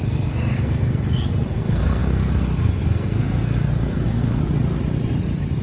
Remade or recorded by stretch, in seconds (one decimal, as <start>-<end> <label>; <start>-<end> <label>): 0.0-4.4 remade; 4.4-5.6 recorded